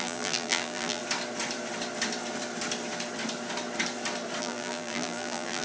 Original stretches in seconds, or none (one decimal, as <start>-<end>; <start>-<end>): 1.0-4.4